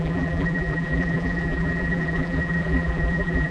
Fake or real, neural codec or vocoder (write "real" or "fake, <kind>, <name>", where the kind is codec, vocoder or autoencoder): fake, vocoder, BigVGAN v2